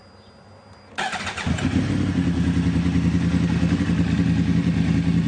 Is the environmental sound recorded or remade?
recorded